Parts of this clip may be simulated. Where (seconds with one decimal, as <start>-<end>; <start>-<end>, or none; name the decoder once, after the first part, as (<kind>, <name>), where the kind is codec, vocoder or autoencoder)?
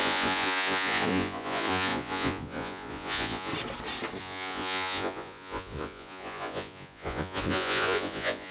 0.0-3.5 (vocoder, Vocos); 4.2-8.5